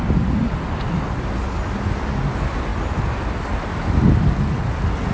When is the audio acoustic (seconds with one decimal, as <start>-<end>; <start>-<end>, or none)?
0.0-5.1